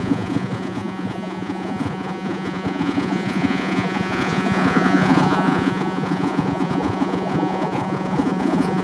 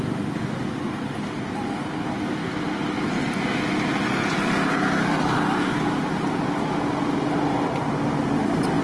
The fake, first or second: first